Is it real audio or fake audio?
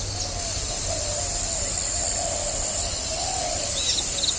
real